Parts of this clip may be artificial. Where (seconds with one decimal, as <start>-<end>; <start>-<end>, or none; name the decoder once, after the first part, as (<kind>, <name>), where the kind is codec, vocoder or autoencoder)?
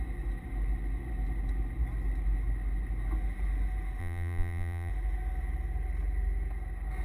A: 4.0-4.9 (vocoder, BigVGAN v2)